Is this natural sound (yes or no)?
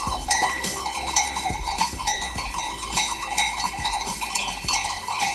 no